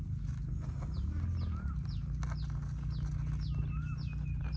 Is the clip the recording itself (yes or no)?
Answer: yes